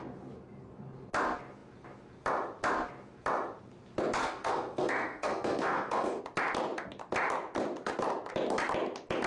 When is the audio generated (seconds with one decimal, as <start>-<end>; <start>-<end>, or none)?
4.2-6.2